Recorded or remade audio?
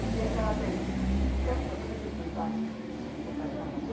remade